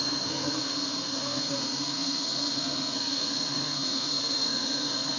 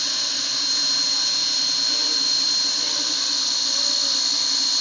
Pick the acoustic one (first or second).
second